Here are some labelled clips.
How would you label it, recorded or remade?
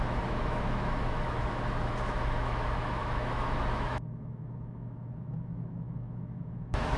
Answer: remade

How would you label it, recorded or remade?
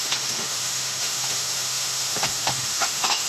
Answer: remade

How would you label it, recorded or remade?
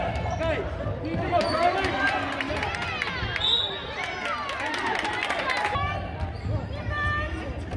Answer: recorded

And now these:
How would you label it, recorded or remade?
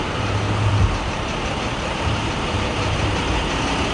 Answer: remade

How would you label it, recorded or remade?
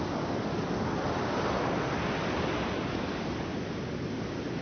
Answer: recorded